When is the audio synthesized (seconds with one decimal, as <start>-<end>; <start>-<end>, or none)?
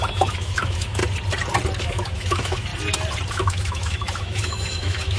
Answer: 0.0-1.0; 1.8-2.7; 3.3-5.2